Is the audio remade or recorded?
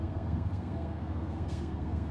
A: remade